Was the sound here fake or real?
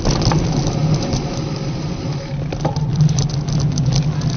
real